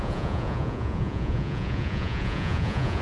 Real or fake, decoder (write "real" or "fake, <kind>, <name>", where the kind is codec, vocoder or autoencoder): fake, vocoder, Vocos